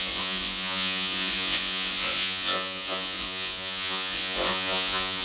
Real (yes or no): no